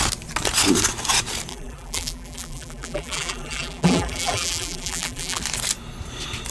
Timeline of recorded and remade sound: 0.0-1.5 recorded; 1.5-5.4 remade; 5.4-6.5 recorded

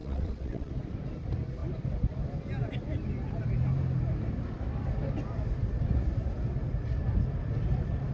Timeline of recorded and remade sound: 0.0-0.7 remade; 0.7-8.1 recorded

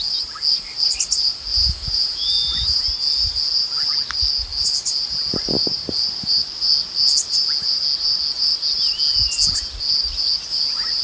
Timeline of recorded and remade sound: 0.0-1.5 recorded; 1.5-2.8 remade; 2.8-11.0 recorded

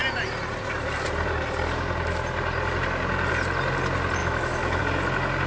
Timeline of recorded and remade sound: 0.0-4.2 recorded; 4.2-4.8 remade; 4.8-5.5 recorded

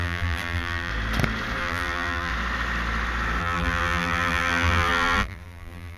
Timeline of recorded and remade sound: 0.0-0.9 remade; 0.9-1.6 recorded; 1.6-2.3 remade; 2.3-3.4 recorded; 3.4-6.0 remade